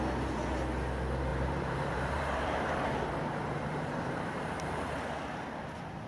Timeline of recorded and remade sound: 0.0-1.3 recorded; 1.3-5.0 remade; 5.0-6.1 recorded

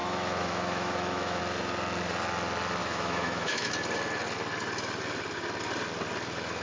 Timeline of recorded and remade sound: 0.0-1.4 remade; 1.4-2.8 recorded; 2.8-3.7 remade; 3.7-6.6 recorded